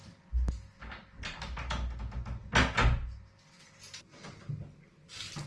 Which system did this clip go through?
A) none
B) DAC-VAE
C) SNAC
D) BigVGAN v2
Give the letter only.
A